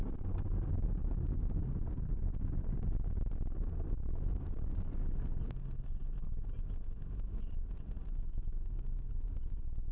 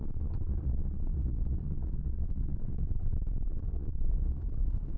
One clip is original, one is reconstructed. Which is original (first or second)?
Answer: first